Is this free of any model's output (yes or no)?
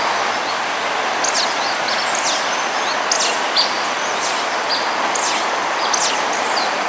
yes